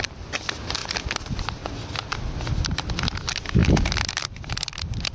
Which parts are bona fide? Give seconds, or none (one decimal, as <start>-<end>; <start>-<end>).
0.0-5.1